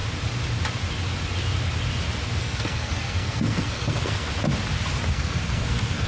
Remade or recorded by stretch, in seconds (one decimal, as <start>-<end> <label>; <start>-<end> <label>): 0.0-2.4 recorded; 2.4-4.3 remade; 4.3-5.1 recorded; 5.1-6.1 remade

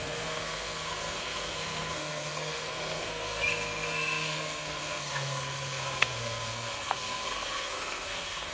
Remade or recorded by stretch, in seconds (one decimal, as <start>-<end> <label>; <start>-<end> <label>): 0.0-8.5 remade

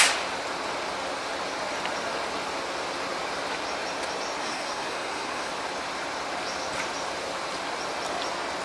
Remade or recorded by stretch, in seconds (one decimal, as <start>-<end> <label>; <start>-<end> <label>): 0.0-4.4 recorded; 4.4-5.5 remade; 5.5-8.6 recorded

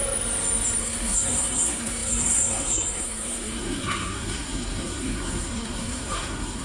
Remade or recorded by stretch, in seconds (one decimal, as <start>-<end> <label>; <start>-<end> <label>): 0.0-0.8 recorded; 0.8-6.6 remade

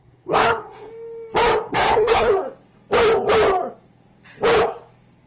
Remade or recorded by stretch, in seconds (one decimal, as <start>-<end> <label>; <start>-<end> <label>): 0.0-0.9 remade; 0.9-1.7 recorded; 1.7-2.3 remade; 2.3-5.3 recorded

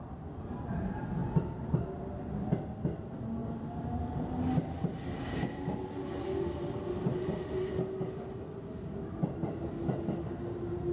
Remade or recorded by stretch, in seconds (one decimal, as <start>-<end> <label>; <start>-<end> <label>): 0.0-10.9 recorded